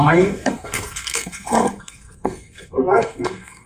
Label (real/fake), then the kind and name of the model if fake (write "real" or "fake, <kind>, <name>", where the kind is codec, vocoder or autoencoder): fake, codec, SNAC